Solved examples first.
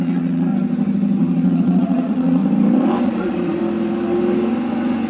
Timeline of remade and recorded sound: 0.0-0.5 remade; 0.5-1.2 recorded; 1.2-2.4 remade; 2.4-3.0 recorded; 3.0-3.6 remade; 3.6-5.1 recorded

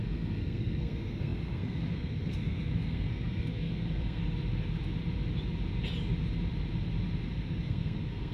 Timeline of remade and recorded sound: 0.0-4.2 remade; 4.2-7.3 recorded; 7.3-8.3 remade

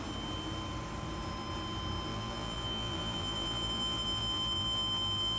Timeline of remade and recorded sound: 0.0-2.1 recorded; 2.1-5.4 remade

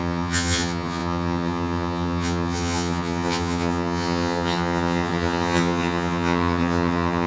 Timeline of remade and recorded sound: 0.0-7.3 remade

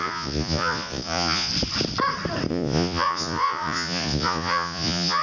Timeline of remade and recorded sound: 0.0-1.5 remade; 1.5-2.5 recorded; 2.5-5.2 remade

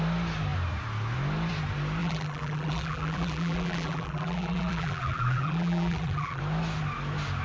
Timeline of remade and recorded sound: 0.0-2.0 recorded; 2.0-6.4 remade; 6.4-7.4 recorded